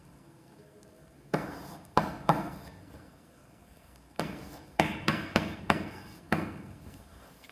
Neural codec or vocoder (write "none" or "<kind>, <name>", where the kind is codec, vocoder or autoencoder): codec, SNAC